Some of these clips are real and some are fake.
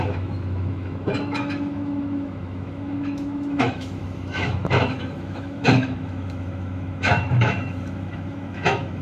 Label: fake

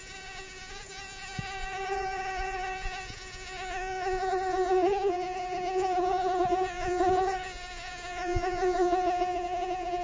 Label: fake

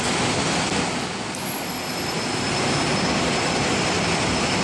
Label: real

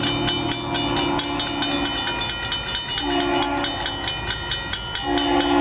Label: real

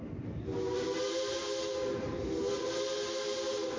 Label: real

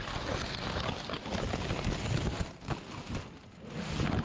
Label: real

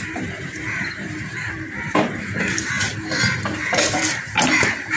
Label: fake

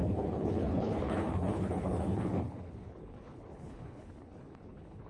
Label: fake